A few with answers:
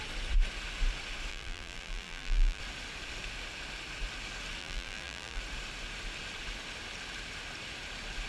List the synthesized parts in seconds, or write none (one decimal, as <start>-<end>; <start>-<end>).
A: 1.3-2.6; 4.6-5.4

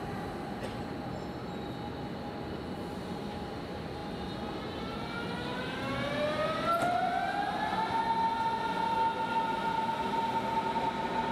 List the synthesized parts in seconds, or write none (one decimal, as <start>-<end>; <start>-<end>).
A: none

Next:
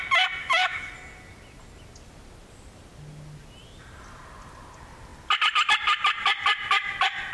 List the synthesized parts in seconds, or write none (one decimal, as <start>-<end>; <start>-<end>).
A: 0.4-0.9

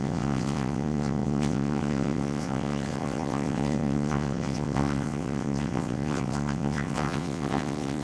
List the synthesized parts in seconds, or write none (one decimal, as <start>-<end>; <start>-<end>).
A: 0.0-8.0

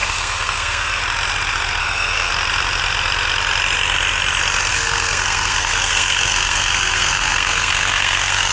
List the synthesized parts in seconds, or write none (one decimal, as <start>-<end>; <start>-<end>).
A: 0.0-1.0; 1.8-2.3; 4.7-8.5

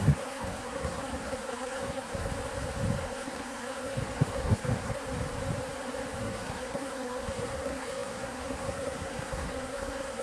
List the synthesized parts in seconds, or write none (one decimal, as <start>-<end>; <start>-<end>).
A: 0.0-2.3; 3.0-5.0; 6.2-10.2

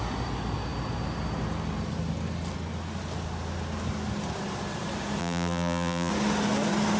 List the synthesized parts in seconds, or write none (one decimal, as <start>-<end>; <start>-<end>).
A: 5.2-6.1

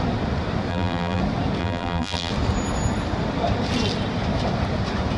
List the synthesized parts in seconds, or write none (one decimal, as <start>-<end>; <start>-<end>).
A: 0.7-1.2; 1.6-2.3